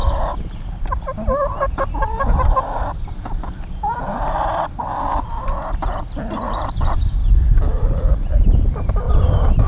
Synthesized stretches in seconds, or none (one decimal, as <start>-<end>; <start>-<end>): 2.2-9.7